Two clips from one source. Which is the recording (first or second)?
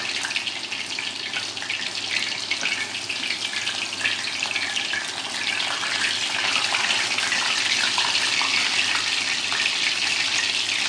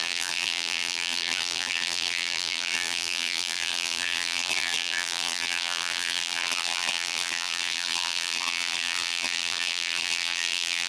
first